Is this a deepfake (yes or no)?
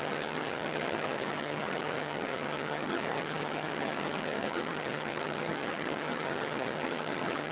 yes